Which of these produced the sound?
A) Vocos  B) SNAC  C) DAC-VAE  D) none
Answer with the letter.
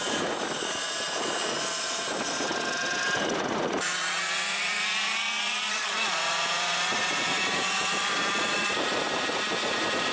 A